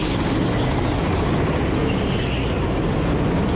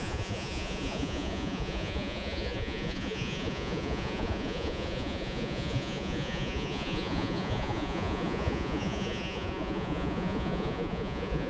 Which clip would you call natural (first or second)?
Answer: first